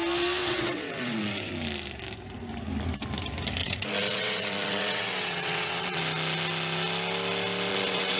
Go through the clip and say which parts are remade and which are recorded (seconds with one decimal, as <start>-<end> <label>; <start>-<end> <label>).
0.0-0.4 recorded; 0.4-1.5 remade; 1.5-3.6 recorded; 3.6-6.0 remade; 6.0-7.7 recorded; 7.7-8.2 remade